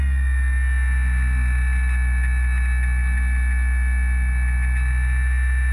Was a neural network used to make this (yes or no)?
no